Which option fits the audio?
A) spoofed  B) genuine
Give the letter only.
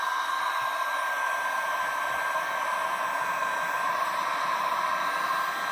B